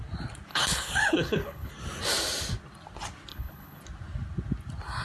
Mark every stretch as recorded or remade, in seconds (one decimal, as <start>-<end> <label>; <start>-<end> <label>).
0.0-0.5 recorded; 0.5-1.7 remade; 1.7-3.3 recorded; 3.3-3.8 remade; 3.8-5.0 recorded